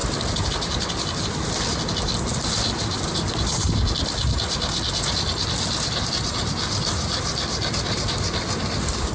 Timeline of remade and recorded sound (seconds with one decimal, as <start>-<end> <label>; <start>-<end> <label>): 0.0-9.1 recorded